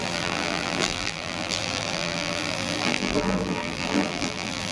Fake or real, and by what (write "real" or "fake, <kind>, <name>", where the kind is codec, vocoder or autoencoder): fake, vocoder, BigVGAN v2